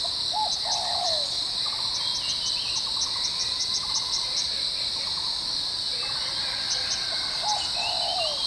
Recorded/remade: recorded